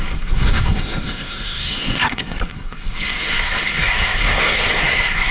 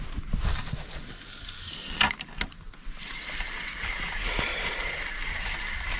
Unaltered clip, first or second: second